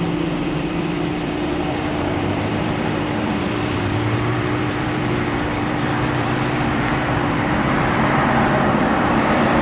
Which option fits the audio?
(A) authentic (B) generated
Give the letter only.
B